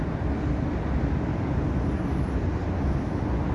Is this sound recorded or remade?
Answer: recorded